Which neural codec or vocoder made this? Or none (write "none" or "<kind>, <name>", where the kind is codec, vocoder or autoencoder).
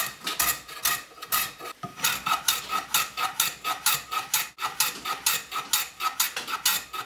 none